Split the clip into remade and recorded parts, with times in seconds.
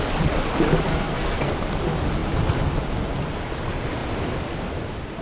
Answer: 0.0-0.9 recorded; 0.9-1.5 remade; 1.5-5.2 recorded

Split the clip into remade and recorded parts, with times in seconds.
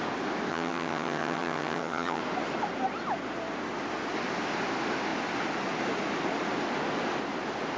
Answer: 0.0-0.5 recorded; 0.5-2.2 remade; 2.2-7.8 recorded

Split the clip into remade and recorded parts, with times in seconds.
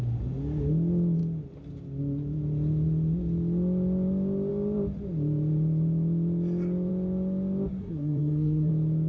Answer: 0.0-7.8 recorded; 7.8-8.7 remade; 8.7-9.1 recorded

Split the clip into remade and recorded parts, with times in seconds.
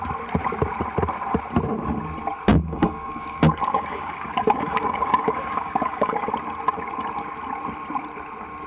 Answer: 0.0-2.5 recorded; 2.5-6.3 remade; 6.3-8.7 recorded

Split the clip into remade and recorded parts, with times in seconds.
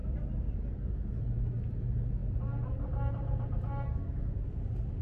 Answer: 0.0-5.0 recorded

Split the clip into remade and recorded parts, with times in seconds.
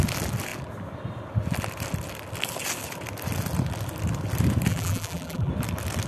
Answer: 0.0-4.7 recorded; 4.7-5.5 remade; 5.5-6.1 recorded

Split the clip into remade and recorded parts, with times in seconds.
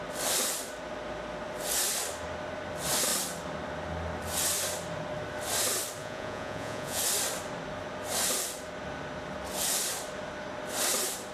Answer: 0.0-6.0 recorded; 6.0-7.0 remade; 7.0-11.3 recorded